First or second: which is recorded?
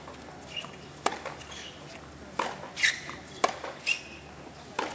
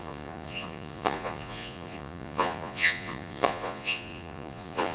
first